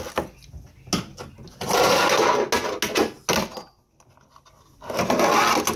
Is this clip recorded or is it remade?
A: recorded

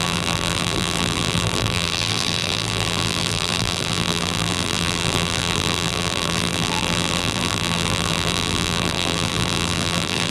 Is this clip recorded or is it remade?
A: remade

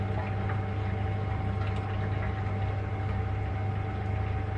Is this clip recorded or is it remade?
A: recorded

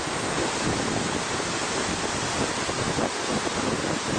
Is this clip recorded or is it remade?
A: recorded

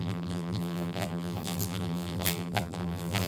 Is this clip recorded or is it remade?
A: remade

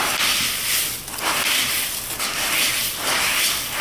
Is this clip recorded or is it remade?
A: recorded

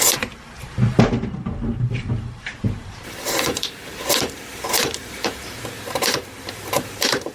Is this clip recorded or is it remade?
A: remade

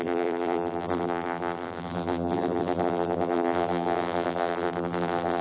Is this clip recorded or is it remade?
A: remade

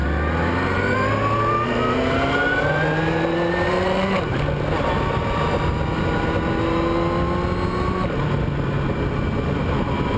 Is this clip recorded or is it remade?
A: recorded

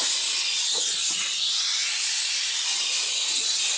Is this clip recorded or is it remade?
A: recorded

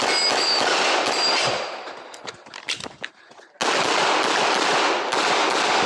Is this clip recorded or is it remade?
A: recorded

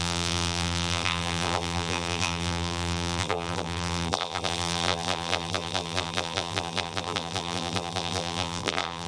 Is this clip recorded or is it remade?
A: remade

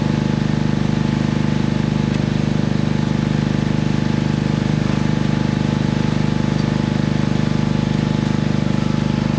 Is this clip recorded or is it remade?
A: recorded